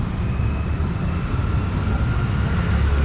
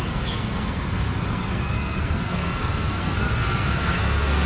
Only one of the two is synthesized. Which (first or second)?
second